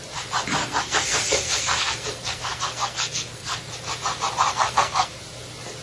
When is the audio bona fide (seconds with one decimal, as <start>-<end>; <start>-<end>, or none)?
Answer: 0.0-0.6; 3.7-4.5; 5.2-5.8